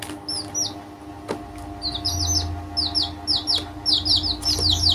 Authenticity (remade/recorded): recorded